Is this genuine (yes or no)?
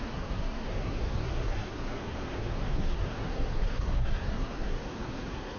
no